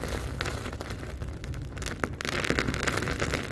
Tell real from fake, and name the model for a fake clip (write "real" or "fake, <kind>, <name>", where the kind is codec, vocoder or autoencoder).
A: real